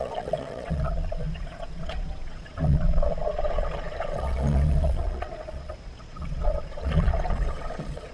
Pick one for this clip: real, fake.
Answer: fake